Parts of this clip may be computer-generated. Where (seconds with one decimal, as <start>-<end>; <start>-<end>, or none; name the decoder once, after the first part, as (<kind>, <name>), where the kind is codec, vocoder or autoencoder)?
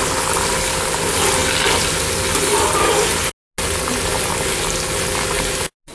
none